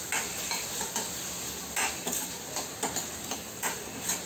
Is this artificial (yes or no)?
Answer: no